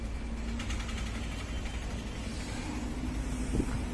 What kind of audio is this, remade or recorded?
recorded